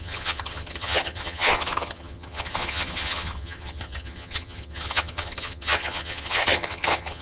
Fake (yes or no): yes